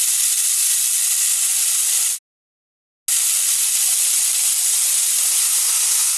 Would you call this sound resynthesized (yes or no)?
no